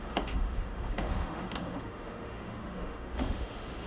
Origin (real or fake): fake